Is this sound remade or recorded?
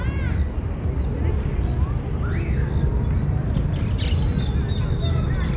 recorded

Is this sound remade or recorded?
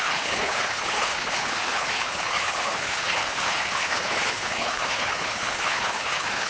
remade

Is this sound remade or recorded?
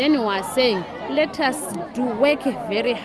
recorded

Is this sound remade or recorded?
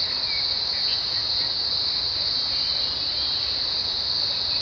recorded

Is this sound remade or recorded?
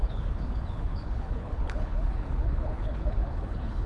remade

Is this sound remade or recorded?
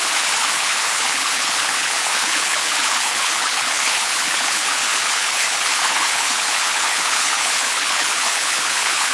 remade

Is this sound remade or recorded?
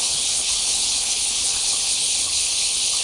remade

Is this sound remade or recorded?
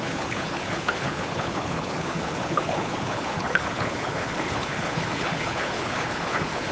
remade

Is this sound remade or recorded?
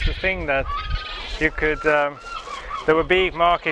recorded